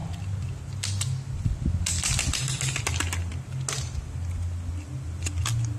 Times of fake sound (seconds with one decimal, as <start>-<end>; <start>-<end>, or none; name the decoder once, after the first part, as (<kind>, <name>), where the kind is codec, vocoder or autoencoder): none